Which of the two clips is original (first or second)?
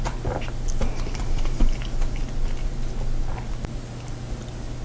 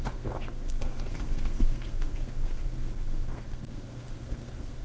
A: first